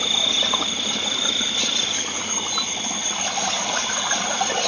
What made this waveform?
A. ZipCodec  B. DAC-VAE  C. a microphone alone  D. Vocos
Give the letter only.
C